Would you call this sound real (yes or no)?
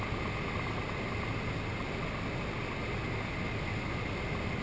yes